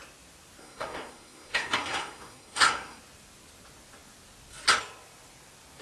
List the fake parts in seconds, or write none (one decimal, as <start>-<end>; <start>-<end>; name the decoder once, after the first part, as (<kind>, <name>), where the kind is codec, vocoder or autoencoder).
0.6-3.0 (codec, SNAC)

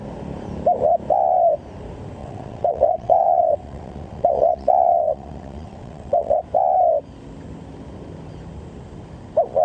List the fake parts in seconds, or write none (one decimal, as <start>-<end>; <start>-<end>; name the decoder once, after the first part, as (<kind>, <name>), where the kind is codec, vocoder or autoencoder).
2.2-6.4 (vocoder, WaveNeXt)

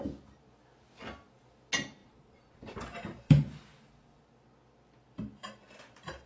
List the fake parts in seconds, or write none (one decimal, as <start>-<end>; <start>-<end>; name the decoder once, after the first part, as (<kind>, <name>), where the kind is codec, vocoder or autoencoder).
2.0-4.2 (vocoder, BigVGAN v2)

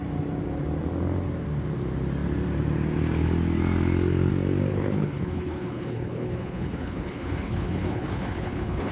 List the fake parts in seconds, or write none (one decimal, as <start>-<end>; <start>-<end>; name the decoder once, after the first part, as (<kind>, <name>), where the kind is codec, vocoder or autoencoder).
4.7-8.9 (codec, HILCodec)

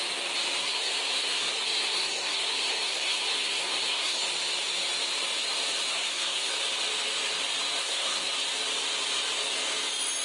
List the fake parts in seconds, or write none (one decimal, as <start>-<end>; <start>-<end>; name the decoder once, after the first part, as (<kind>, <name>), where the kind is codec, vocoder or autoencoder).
0.6-4.2 (codec, SNAC); 5.9-6.5; 7.8-8.3

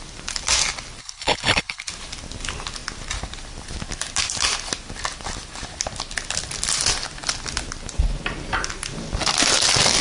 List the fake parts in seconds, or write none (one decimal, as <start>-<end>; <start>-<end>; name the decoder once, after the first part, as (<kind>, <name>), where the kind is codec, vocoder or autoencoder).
1.0-1.9 (codec, HILCodec)